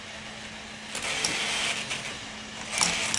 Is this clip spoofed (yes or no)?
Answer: no